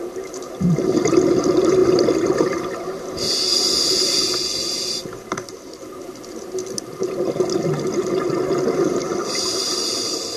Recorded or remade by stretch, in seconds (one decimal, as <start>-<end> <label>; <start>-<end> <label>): 0.0-10.4 recorded